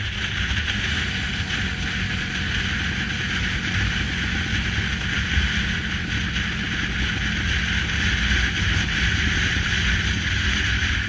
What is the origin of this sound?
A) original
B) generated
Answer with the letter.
A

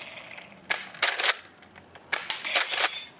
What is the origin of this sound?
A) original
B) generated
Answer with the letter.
A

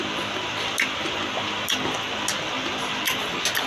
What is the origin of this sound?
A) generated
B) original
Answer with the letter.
B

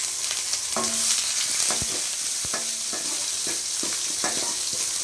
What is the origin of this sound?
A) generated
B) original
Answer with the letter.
B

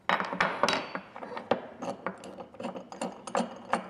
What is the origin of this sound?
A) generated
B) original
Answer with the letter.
B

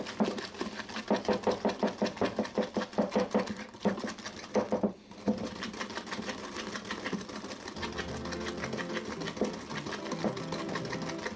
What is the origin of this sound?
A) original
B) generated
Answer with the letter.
A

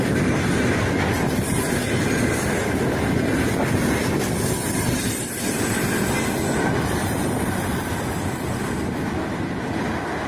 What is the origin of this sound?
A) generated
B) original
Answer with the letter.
B